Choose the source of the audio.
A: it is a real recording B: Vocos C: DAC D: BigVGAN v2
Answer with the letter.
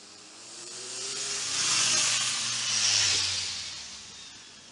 B